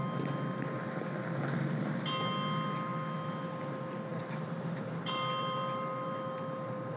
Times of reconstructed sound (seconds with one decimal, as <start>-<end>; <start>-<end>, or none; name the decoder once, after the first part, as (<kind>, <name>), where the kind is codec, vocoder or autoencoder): 4.1-7.0 (vocoder, BigVGAN v2)